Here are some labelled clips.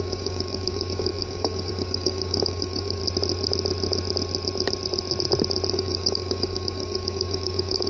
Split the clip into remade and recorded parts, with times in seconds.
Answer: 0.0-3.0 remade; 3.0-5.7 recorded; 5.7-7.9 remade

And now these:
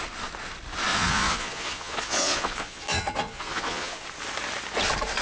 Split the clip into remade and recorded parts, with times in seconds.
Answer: 0.0-0.9 recorded; 0.9-4.0 remade; 4.0-5.2 recorded

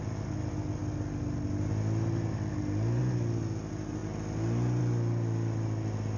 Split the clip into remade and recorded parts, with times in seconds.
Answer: 0.0-6.2 recorded

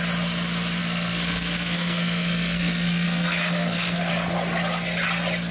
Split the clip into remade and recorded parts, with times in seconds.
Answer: 0.0-0.8 recorded; 0.8-4.1 remade; 4.1-5.5 recorded

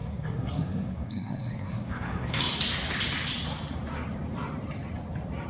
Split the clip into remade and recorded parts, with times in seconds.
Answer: 0.0-2.4 remade; 2.4-5.5 recorded